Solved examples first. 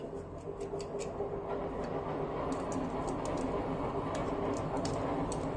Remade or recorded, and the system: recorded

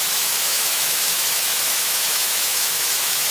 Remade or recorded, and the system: remade, autoencoder, DAC-VAE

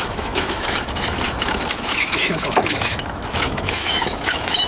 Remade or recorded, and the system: remade, autoencoder, DAC-VAE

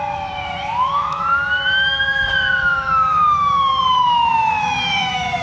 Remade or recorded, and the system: remade, autoencoder, DAC-VAE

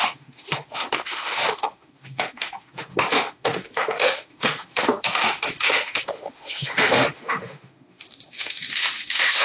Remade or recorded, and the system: remade, autoencoder, DAC-VAE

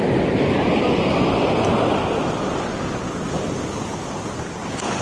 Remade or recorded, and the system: recorded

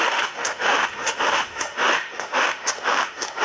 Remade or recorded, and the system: remade, autoencoder, DAC-VAE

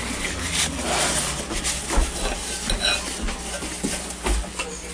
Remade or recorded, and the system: recorded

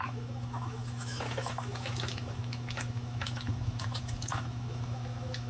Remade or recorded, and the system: remade, autoencoder, DAC-VAE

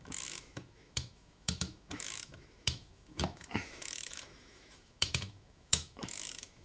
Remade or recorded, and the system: remade, autoencoder, DAC-VAE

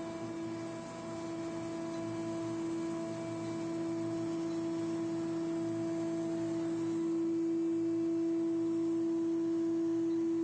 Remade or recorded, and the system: recorded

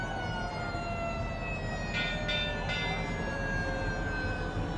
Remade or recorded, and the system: recorded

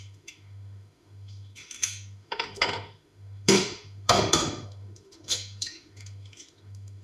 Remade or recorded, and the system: remade, autoencoder, DAC-VAE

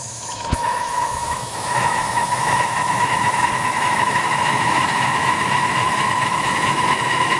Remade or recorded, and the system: remade, autoencoder, DAC-VAE